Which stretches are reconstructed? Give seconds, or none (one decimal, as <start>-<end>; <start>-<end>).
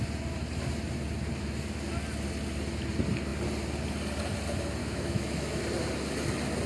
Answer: 4.8-5.6